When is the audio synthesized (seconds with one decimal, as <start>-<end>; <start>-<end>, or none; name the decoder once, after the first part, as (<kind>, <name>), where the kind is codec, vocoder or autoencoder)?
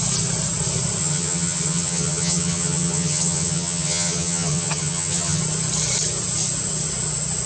1.0-5.4 (vocoder, HiFi-GAN)